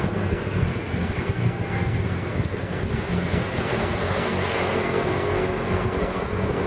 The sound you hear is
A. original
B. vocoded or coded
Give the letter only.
B